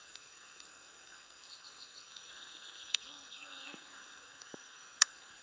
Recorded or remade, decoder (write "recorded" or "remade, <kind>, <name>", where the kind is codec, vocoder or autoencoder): remade, codec, SNAC